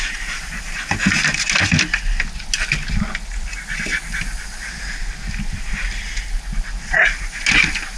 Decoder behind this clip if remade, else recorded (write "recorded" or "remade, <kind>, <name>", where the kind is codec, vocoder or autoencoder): recorded